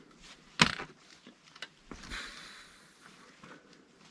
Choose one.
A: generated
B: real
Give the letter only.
B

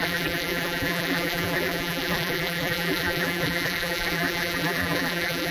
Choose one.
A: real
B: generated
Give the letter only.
B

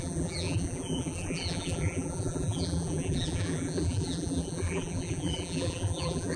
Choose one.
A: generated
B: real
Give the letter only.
A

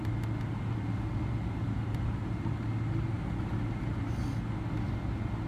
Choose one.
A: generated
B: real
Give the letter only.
B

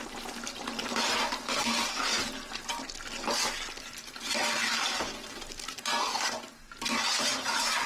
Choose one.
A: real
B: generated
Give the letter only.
A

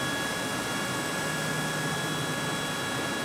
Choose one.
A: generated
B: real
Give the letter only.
B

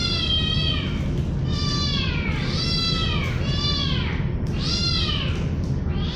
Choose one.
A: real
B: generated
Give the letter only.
A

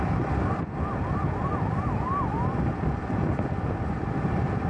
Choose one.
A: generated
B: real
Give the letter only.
A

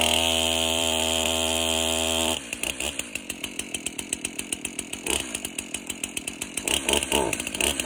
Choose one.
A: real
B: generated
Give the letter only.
B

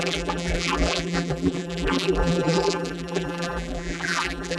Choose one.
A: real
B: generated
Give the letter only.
B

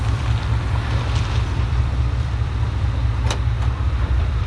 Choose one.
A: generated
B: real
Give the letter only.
A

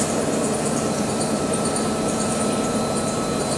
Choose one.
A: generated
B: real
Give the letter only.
A